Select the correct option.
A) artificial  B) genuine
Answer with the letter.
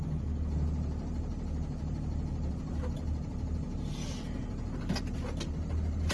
B